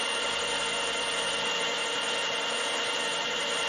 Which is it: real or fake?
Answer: real